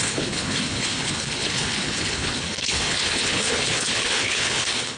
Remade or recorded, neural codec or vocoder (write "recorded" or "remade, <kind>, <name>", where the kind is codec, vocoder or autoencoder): remade, codec, HILCodec